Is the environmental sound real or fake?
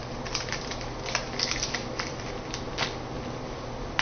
real